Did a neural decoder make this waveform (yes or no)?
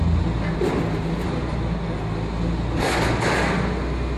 no